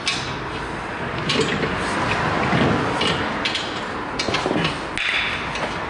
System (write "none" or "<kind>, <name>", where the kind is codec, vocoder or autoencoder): none